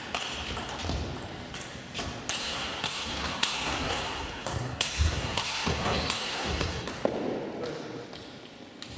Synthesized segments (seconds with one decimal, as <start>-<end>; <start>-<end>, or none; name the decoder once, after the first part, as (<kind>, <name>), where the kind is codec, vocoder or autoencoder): 2.4-6.9 (codec, SNAC)